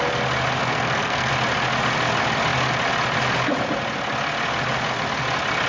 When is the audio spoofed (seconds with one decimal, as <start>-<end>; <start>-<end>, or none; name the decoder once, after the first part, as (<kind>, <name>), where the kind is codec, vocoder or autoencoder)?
0.6-1.3 (codec, SNAC)